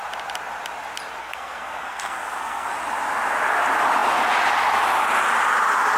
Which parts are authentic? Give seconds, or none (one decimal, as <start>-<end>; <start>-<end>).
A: 0.0-1.2; 2.7-6.0

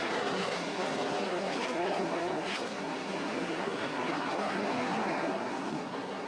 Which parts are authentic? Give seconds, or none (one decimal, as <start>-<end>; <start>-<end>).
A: none

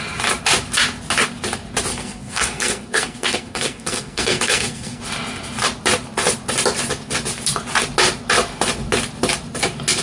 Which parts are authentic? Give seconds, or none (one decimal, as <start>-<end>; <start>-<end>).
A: 0.0-1.9; 5.0-10.0

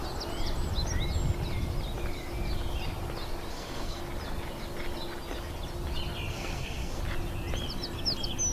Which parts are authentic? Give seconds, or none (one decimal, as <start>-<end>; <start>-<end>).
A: 0.0-3.5; 4.0-6.3; 7.0-8.5